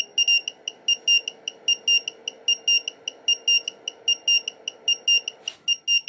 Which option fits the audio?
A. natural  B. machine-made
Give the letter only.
A